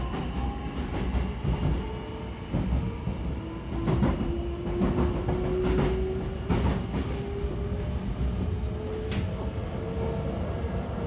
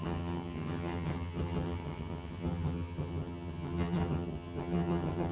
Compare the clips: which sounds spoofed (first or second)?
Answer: second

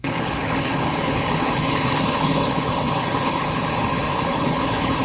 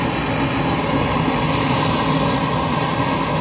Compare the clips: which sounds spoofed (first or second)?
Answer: first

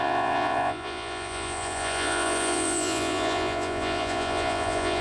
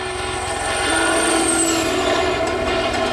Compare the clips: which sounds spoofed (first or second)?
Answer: first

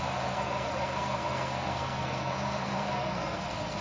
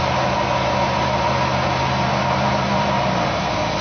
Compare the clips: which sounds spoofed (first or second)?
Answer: first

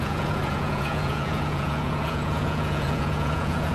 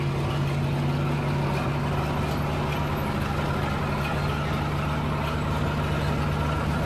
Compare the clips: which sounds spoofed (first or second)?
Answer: first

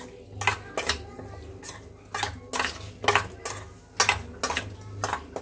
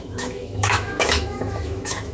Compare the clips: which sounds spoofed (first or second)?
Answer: second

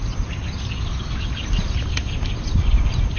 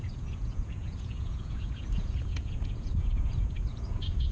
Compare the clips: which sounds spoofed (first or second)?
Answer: second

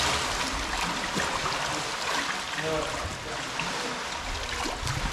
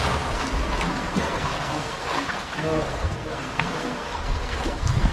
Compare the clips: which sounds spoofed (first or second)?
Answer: second